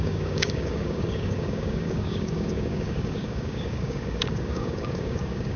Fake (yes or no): yes